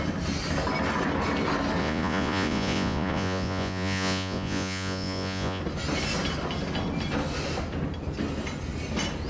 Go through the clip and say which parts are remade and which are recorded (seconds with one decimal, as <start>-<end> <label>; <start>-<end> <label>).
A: 0.0-1.8 recorded; 1.8-5.6 remade; 5.6-9.3 recorded